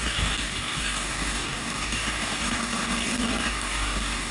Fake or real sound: fake